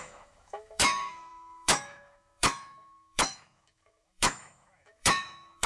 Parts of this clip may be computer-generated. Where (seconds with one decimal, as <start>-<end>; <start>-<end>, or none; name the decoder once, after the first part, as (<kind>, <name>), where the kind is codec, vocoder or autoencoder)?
0.0-5.7 (autoencoder, DAC-VAE)